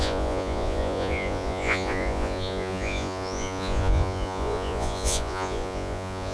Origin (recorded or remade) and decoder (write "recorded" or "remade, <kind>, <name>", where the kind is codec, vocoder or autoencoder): remade, vocoder, Vocos